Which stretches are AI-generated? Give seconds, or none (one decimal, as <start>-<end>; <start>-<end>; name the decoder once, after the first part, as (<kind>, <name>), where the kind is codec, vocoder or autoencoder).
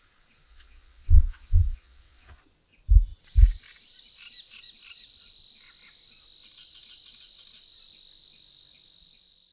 0.5-2.4 (vocoder, WaveNeXt)